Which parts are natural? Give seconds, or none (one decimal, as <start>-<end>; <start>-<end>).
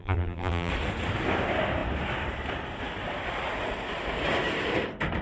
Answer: 0.7-5.2